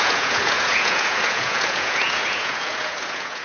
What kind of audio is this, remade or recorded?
remade